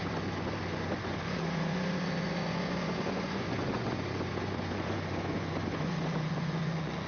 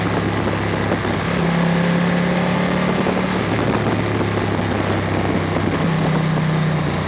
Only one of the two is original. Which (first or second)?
second